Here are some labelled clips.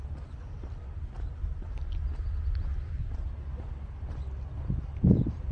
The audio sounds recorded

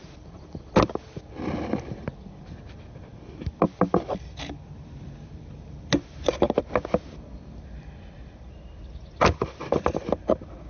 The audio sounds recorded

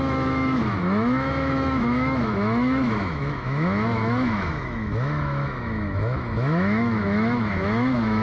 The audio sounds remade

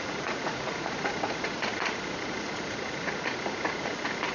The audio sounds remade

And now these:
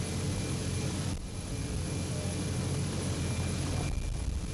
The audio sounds recorded